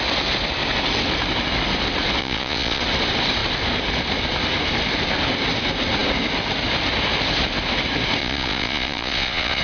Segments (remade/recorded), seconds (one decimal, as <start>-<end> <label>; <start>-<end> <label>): 0.0-2.2 recorded; 2.2-2.8 remade; 2.8-8.2 recorded; 8.2-9.6 remade